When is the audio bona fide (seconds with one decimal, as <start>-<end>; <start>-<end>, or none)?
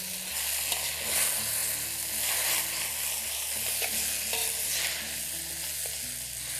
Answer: 0.0-6.6